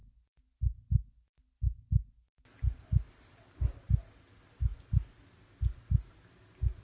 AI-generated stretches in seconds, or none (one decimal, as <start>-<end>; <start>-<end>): none